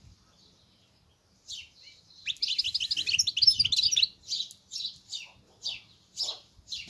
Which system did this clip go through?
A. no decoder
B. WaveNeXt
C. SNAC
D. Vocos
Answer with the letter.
A